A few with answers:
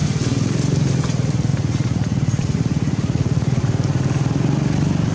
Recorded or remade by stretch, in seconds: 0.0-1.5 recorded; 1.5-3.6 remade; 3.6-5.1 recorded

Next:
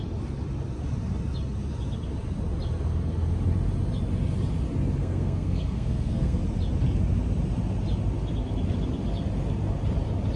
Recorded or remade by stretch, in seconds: 0.0-5.0 recorded; 5.0-6.4 remade; 6.4-10.4 recorded

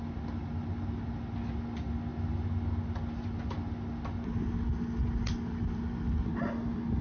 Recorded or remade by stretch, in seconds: 0.0-7.0 recorded

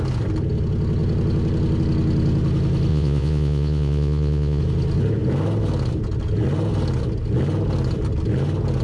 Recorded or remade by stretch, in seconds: 0.0-2.9 recorded; 2.9-4.6 remade; 4.6-8.8 recorded